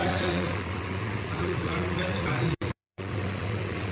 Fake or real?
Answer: fake